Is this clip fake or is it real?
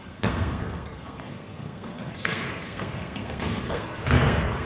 fake